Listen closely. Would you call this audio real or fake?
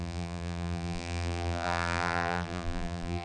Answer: fake